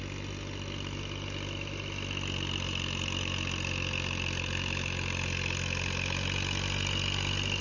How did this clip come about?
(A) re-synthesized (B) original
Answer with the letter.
B